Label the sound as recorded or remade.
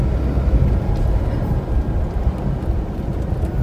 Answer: recorded